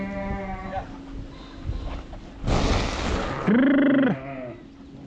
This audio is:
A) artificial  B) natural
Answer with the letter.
B